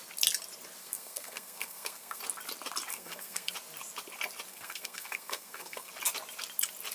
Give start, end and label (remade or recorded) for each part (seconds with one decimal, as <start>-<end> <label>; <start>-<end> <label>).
0.0-0.8 recorded; 0.8-2.2 remade; 2.2-2.9 recorded; 2.9-3.5 remade; 3.5-4.5 recorded; 4.5-5.9 remade; 5.9-6.9 recorded